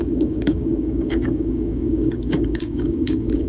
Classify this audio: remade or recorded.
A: remade